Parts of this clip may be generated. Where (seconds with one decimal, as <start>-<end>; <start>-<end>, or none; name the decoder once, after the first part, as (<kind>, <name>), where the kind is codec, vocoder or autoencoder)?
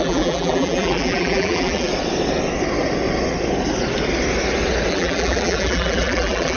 0.0-1.9 (vocoder, BigVGAN v2); 4.9-6.6